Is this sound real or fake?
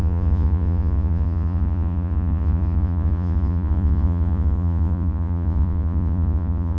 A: fake